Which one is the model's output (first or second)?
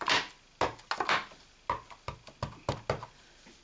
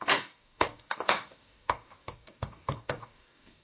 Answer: second